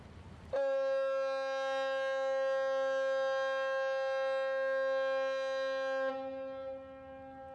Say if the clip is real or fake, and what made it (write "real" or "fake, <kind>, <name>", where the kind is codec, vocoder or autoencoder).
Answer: real